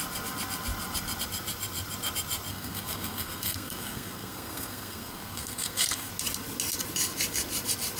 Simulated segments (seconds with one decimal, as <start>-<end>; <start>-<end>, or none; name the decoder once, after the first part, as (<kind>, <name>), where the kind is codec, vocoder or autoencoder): 2.5-6.1 (codec, SNAC)